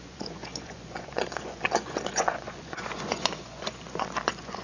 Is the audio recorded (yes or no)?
no